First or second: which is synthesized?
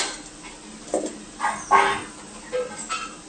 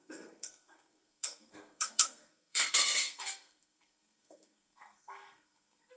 second